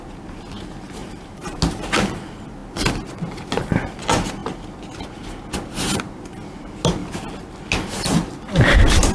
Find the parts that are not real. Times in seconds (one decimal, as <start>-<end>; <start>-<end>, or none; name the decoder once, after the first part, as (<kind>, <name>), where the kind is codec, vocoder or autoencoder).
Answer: 1.0-1.6 (vocoder, BigVGAN v2)